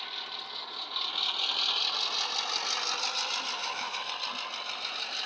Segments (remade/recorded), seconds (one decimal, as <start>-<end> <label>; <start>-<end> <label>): 0.0-3.6 recorded; 3.6-4.1 remade; 4.1-5.3 recorded